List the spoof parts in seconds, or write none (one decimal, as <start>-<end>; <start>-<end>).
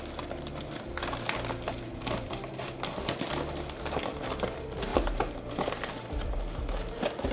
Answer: none